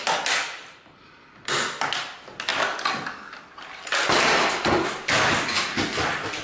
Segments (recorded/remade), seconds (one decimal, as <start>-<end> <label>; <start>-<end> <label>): 0.0-6.4 recorded